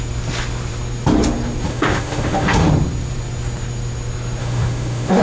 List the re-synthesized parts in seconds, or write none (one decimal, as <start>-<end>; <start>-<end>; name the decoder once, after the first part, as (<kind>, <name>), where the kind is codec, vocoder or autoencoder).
1.7-2.7 (autoencoder, DAC-VAE); 4.4-5.2